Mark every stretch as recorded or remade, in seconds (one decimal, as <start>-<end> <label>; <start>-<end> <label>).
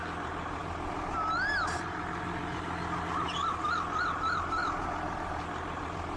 0.0-6.2 recorded